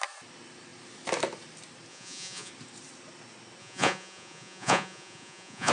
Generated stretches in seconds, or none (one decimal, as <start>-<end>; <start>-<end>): 1.9-2.5; 3.6-5.7